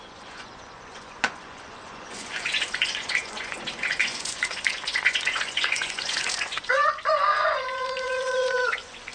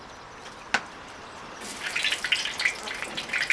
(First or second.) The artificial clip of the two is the first